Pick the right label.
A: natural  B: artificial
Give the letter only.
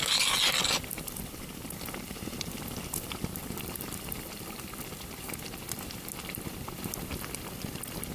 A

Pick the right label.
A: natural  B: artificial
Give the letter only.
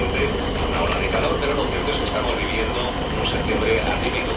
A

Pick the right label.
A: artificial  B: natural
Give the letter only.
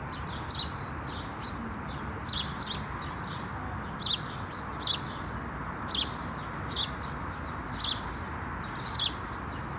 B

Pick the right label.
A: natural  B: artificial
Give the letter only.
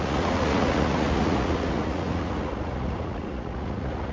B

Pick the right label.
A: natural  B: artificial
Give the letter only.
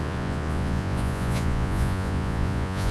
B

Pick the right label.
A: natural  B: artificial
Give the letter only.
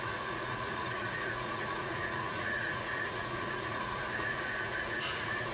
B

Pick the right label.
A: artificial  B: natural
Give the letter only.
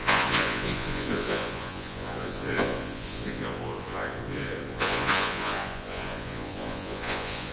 A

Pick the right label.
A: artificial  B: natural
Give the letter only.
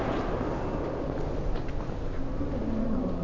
B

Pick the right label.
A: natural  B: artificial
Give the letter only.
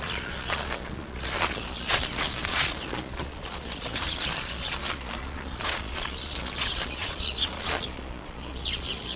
B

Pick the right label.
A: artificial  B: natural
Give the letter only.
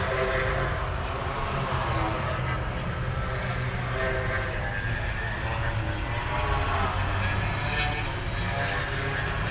B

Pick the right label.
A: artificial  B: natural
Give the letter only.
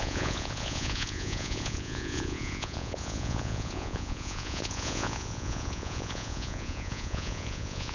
A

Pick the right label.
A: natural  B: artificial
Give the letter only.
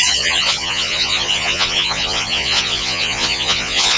B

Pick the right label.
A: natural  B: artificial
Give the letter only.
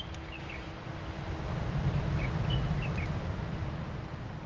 A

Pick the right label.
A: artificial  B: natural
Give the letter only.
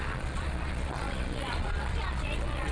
A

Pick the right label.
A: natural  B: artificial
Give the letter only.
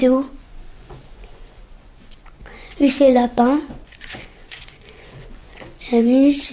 B